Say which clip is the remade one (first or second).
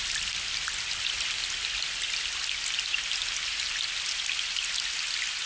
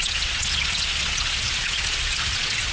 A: second